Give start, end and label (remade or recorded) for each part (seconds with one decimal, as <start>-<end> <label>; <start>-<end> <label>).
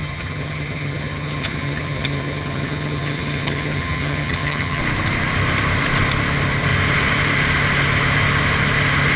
0.0-4.8 remade; 4.8-9.2 recorded